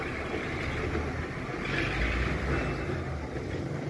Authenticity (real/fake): real